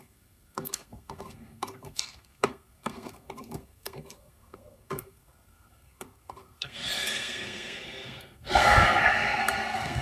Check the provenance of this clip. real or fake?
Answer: fake